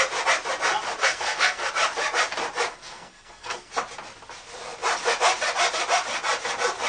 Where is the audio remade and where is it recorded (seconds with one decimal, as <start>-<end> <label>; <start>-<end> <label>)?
0.0-1.0 recorded; 1.0-1.7 remade; 1.7-2.7 recorded; 2.7-3.7 remade; 3.7-6.9 recorded